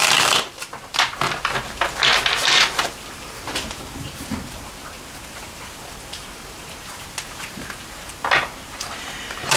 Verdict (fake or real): fake